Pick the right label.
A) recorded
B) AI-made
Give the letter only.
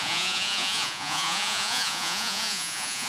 B